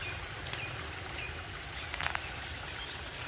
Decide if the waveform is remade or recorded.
remade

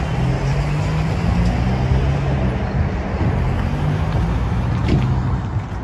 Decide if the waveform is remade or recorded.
recorded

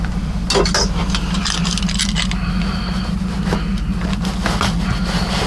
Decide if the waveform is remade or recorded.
recorded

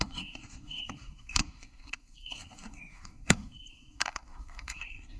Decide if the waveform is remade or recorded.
remade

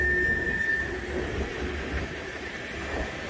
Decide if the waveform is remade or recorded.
recorded